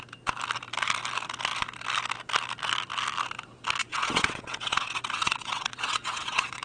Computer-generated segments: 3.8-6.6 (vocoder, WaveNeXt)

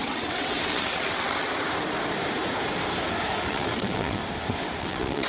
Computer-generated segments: 0.0-1.5 (vocoder, WaveNeXt); 3.5-4.2; 4.8-5.3